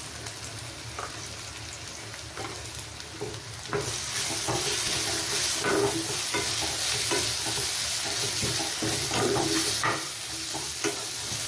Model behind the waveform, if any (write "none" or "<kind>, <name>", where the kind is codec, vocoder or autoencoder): none